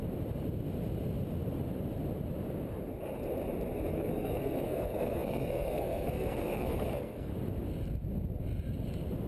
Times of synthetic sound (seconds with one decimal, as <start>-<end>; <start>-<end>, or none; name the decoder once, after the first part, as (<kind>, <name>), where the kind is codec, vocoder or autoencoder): 3.9-7.3 (codec, SNAC)